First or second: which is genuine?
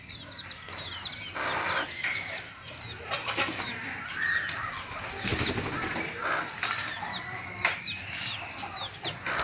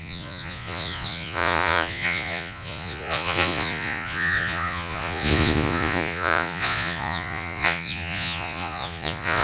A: first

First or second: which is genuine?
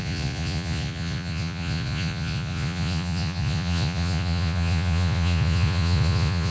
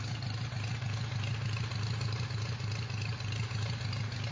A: second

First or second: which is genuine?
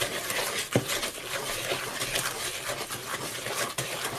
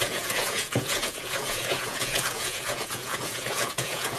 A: first